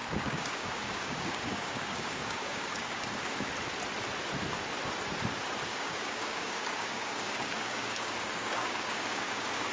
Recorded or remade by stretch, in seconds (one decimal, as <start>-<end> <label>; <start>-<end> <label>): 0.0-3.5 remade; 3.5-5.7 recorded; 5.7-9.7 remade